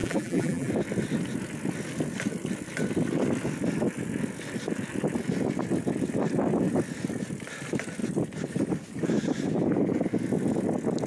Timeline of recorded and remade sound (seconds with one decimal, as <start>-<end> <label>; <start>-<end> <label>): 0.0-0.7 remade; 0.7-11.1 recorded